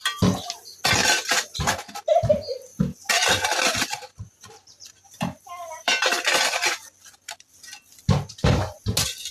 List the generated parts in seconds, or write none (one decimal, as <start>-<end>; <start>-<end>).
1.0-1.6; 3.7-6.1